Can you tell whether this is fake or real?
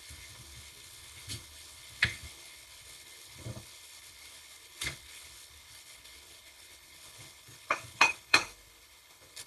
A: fake